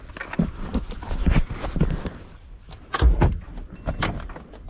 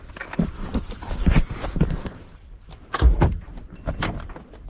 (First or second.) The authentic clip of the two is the first